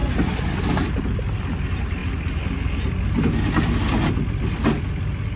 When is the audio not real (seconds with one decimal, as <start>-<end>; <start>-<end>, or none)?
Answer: none